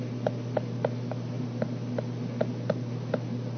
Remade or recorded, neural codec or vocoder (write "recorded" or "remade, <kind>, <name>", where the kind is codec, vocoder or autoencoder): recorded